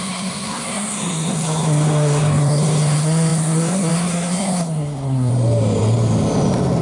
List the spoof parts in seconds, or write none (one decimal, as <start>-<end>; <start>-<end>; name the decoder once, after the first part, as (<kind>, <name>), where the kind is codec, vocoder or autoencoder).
0.0-5.3 (codec, SNAC)